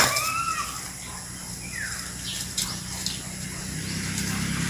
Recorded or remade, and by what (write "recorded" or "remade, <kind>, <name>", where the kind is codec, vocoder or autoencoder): remade, vocoder, BigVGAN v2